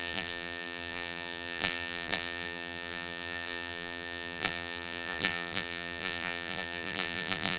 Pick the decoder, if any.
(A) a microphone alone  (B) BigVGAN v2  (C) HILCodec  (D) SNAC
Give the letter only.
B